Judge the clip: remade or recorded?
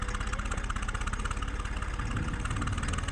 recorded